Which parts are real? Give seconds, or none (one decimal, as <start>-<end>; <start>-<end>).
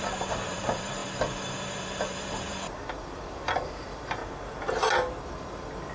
4.2-5.2